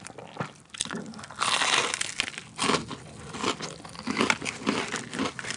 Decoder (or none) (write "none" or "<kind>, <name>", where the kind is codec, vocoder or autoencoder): none